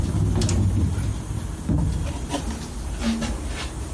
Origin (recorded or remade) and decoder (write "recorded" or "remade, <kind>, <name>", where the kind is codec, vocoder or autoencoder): recorded